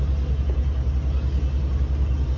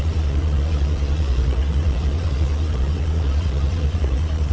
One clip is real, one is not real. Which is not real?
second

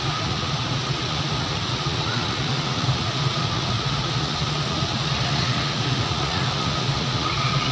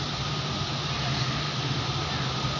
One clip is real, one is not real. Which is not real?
first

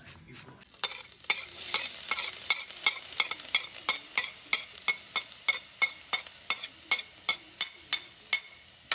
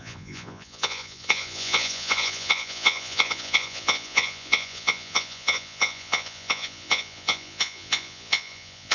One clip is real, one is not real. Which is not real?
second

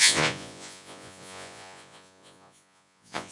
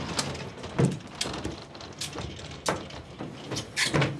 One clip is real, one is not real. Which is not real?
first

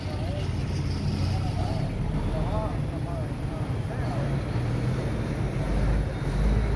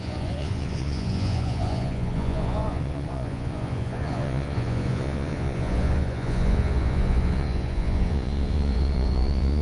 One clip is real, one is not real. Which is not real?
second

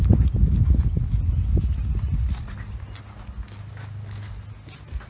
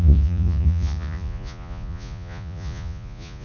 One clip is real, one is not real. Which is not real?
second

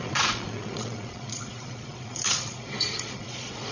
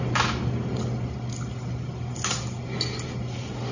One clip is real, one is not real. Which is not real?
first